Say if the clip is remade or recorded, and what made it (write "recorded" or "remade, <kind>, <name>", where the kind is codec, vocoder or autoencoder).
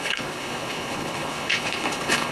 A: remade, codec, HILCodec